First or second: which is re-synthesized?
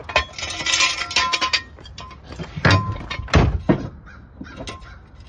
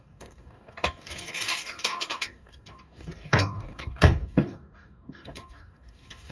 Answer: second